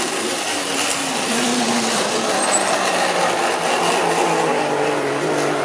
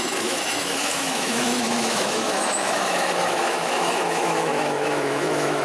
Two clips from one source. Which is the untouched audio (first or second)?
first